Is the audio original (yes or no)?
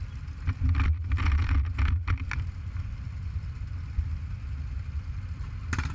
yes